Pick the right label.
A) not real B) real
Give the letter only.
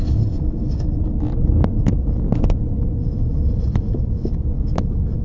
B